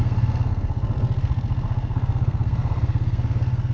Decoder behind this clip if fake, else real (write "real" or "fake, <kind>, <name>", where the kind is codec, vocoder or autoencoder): fake, codec, SNAC